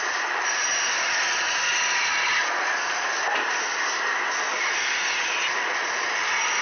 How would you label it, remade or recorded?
recorded